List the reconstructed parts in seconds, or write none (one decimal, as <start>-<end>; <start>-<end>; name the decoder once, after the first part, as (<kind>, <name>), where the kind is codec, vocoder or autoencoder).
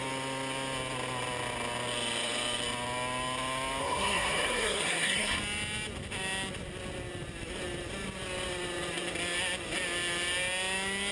3.8-5.4 (codec, SNAC)